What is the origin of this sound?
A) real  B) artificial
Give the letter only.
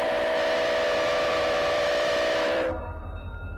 B